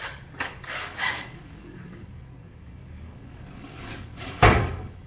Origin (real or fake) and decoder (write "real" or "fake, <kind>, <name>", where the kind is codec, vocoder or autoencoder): fake, codec, DAC